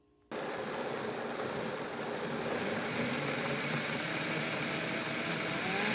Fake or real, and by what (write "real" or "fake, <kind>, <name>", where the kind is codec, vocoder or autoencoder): real